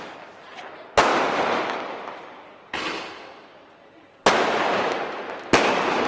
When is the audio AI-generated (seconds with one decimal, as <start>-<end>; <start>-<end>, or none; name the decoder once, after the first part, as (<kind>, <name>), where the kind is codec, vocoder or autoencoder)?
none